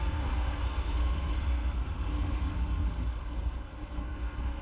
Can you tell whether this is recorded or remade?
remade